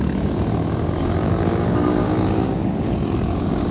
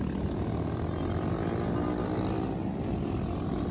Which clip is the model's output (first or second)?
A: first